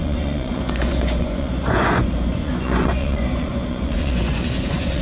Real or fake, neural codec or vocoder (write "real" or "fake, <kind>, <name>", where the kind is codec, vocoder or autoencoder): fake, vocoder, Vocos